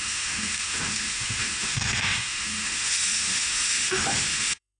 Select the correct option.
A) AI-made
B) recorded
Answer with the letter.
A